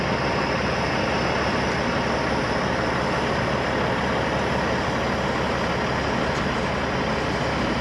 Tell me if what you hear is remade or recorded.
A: recorded